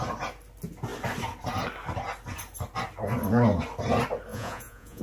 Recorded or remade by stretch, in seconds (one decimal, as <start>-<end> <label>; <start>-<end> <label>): 0.0-4.3 recorded; 4.3-5.0 remade